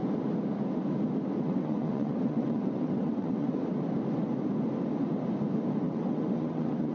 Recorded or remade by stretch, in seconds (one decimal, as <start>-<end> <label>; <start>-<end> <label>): 0.0-1.4 recorded; 1.4-3.6 remade; 3.6-5.8 recorded; 5.8-6.9 remade